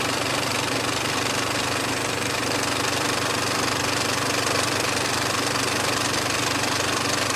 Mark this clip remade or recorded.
recorded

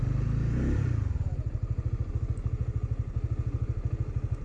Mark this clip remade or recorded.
recorded